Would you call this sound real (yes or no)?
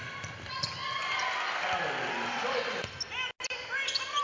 yes